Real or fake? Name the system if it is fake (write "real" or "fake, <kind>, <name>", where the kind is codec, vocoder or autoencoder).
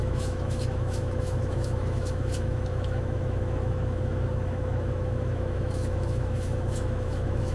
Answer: fake, autoencoder, DAC-VAE